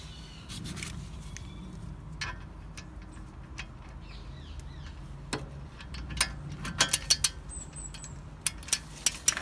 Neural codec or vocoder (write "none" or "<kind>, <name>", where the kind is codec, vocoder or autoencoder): none